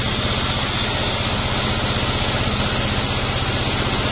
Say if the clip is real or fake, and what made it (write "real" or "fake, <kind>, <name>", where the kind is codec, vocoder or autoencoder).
real